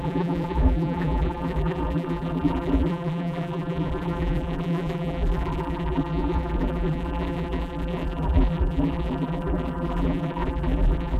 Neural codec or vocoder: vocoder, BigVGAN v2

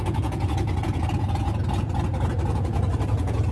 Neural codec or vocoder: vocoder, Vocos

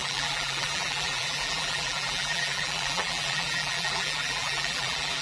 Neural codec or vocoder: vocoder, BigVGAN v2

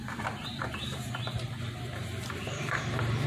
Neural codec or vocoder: vocoder, BigVGAN v2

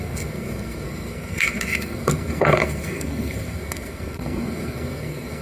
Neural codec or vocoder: codec, SNAC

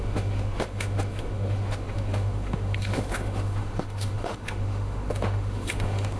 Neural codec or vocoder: autoencoder, DAC-VAE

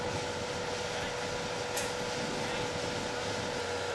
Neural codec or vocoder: none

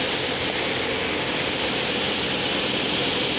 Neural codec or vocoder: none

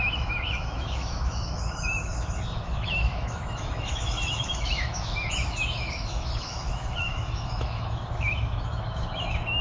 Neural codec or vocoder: autoencoder, DAC-VAE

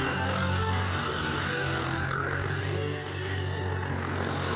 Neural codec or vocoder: codec, DAC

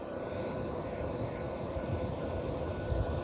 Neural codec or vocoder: vocoder, BigVGAN v2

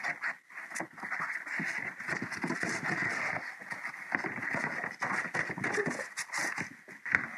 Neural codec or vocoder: none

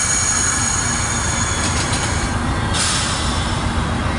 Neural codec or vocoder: none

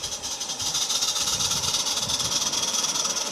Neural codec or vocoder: none